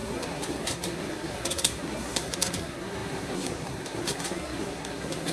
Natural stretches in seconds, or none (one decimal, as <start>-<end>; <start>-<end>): none